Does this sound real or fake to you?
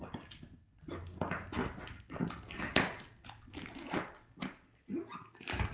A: real